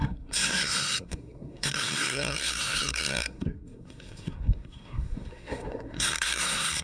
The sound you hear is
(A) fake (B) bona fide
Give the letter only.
A